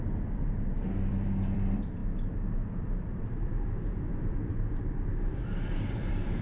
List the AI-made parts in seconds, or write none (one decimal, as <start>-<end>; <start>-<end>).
0.0-2.0; 4.1-6.4